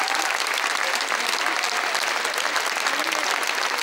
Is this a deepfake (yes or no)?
no